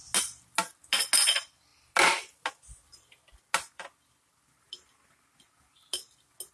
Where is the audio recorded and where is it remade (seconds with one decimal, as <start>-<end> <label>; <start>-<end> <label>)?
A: 0.0-6.5 recorded

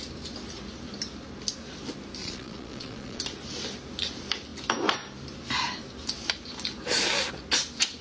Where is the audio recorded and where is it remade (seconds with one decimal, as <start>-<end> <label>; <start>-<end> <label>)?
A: 0.0-2.2 recorded; 2.2-3.2 remade; 3.2-8.0 recorded